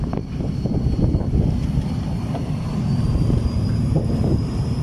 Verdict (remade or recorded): remade